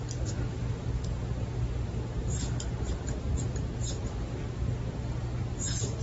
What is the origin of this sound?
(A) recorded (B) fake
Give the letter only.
A